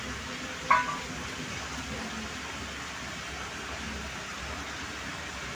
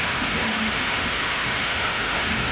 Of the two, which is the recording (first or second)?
first